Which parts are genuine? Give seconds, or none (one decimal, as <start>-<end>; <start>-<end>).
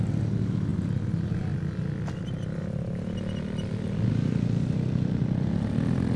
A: 0.0-6.2